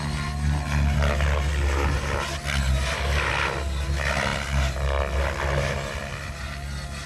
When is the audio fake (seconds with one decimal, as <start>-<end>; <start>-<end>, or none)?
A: none